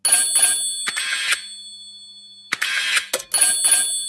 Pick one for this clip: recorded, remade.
recorded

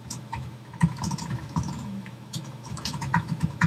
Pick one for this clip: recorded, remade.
remade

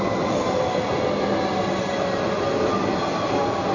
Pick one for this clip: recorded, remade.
recorded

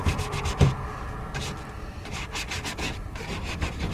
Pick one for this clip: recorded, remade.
recorded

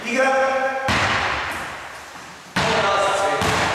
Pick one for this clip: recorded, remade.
recorded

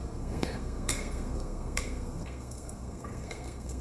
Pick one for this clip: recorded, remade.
remade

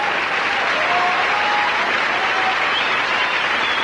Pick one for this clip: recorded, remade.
recorded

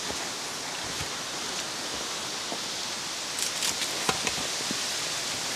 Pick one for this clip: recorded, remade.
recorded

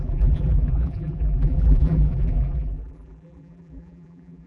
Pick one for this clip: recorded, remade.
remade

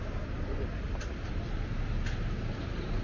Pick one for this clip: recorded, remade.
recorded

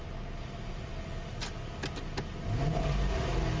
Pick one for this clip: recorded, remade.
recorded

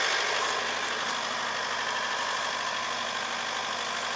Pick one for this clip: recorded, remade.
recorded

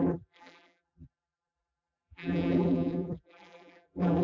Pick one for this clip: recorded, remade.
remade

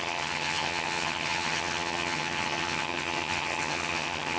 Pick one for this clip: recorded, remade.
remade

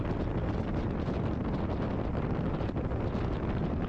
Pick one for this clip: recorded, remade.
recorded